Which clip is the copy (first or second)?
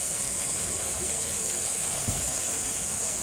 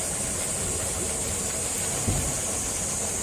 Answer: first